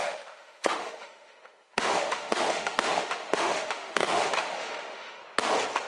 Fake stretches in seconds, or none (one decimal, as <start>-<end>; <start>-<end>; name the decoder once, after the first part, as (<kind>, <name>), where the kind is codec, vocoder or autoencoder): 0.0-5.2 (autoencoder, DAC-VAE)